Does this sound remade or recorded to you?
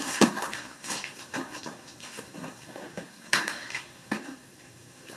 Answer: remade